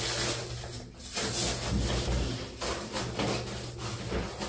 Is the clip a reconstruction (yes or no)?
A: no